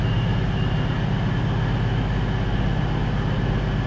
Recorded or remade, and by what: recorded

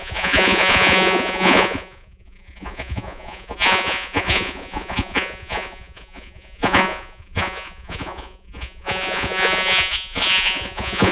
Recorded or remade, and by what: remade, vocoder, Vocos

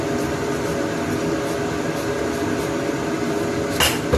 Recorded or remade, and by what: recorded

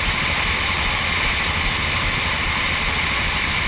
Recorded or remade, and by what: recorded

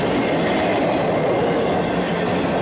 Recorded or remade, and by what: recorded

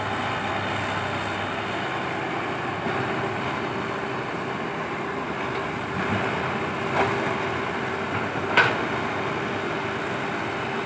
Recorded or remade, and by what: recorded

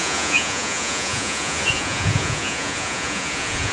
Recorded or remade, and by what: remade, vocoder, Vocos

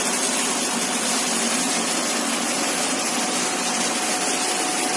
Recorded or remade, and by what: recorded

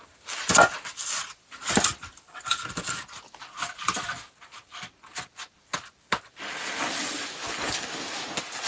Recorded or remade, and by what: recorded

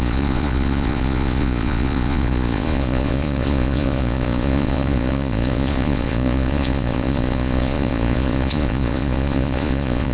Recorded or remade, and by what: remade, vocoder, Vocos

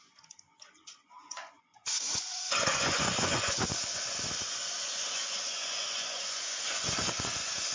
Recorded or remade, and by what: remade, vocoder, Vocos